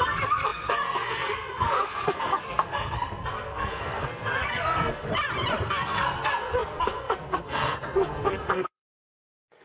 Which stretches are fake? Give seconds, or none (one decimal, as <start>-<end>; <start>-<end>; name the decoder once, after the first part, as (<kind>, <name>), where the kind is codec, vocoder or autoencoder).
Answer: 0.0-5.1 (codec, SNAC); 5.7-9.6